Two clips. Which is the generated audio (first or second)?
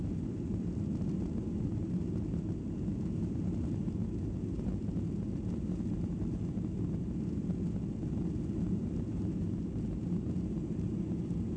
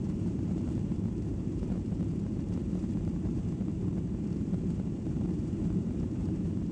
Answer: second